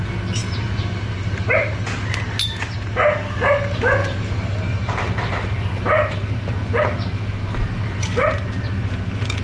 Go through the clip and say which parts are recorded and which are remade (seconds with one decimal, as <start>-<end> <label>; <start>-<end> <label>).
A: 0.0-0.4 recorded; 0.4-1.7 remade; 1.7-4.0 recorded; 4.0-8.3 remade; 8.3-9.4 recorded